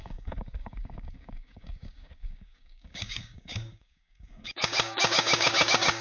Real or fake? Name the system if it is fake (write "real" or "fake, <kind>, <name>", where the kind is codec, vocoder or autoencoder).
fake, codec, DAC